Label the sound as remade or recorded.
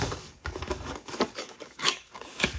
remade